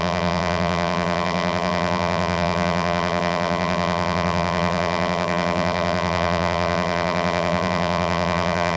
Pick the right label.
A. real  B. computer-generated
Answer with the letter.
B